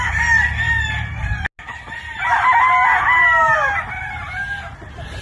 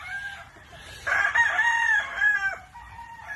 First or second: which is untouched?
first